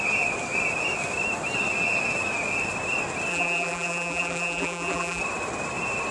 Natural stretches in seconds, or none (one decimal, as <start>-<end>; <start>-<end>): 0.0-3.3; 5.2-6.1